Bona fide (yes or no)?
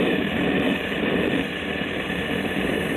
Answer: no